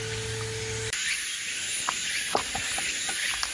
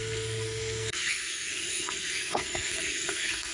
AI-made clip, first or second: second